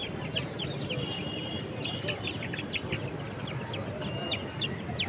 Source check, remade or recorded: recorded